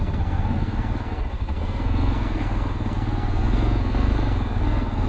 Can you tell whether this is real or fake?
fake